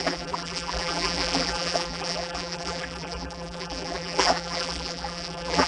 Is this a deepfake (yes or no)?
yes